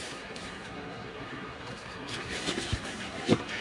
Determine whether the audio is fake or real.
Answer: fake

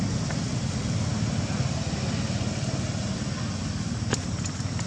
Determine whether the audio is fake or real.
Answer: real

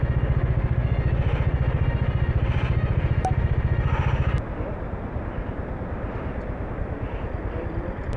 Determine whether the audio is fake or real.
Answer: real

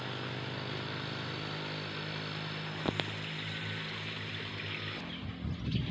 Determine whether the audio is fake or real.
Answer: real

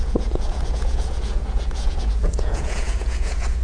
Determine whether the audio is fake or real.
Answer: fake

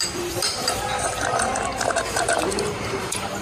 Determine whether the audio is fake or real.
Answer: fake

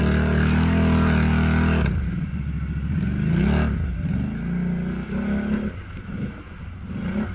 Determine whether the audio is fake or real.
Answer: real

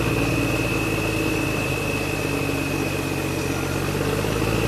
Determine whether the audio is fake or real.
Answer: real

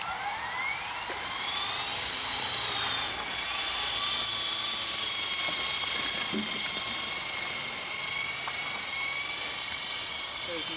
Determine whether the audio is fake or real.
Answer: real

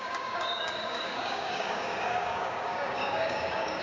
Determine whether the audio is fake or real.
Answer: fake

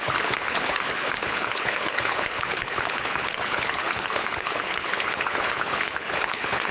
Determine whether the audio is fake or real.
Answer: fake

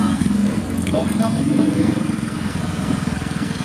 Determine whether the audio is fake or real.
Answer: fake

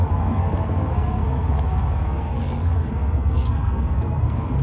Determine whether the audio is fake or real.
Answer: fake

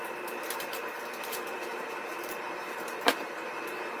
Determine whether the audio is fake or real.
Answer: fake